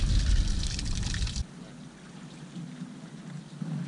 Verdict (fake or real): real